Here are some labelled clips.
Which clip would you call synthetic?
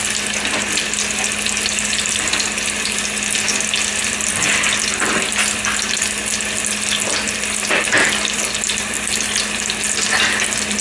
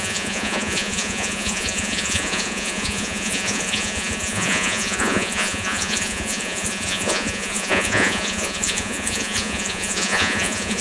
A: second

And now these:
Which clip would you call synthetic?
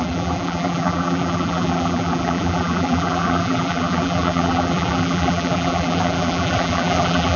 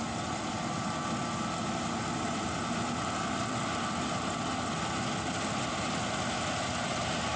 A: first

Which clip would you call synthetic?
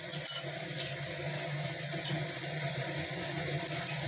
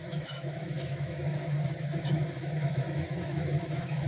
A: second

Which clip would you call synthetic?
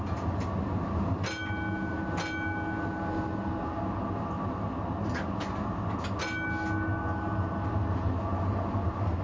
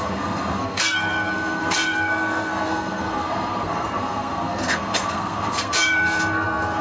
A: second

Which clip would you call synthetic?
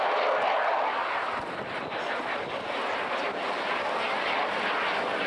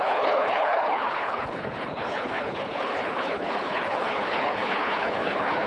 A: second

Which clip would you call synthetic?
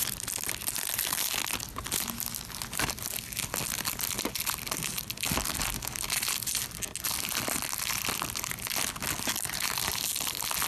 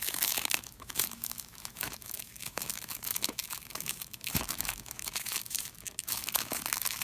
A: second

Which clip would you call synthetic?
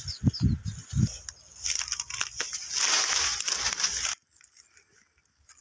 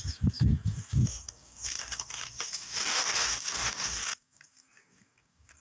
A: second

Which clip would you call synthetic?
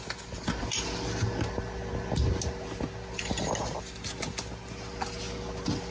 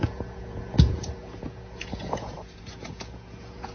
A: second